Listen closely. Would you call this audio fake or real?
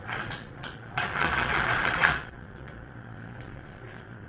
fake